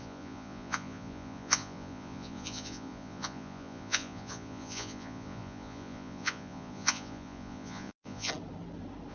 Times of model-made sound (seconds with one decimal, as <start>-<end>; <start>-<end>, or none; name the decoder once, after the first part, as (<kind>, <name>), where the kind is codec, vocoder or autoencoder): 0.0-8.3 (vocoder, Vocos)

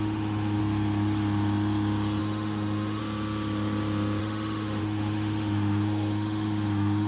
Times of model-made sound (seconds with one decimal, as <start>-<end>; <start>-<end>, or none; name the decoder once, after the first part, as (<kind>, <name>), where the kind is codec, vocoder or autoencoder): 0.0-0.6 (autoencoder, DAC-VAE); 2.2-3.0; 4.2-7.1

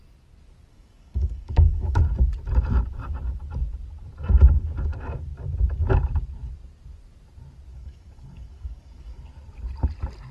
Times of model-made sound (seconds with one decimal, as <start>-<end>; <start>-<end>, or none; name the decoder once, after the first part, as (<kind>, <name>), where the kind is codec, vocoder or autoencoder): 0.7-2.0 (codec, DAC); 7.7-9.2

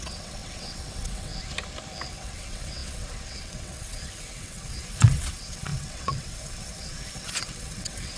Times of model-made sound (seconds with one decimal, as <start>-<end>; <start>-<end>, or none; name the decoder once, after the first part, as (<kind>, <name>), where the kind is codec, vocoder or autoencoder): 0.0-1.3 (vocoder, WaveNeXt); 2.1-8.2

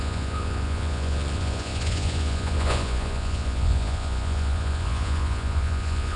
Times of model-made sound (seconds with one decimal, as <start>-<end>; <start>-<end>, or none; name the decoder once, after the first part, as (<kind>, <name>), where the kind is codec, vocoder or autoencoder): 0.0-6.2 (vocoder, Vocos)

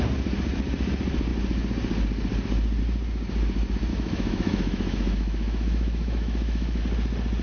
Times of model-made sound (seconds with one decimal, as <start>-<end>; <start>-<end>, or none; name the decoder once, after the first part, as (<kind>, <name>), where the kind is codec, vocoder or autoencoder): 3.9-6.8 (autoencoder, DAC-VAE)

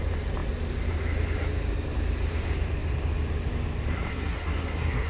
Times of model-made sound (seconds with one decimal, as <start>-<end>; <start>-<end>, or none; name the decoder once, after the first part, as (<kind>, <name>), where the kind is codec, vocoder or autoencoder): 4.1-5.1 (codec, SNAC)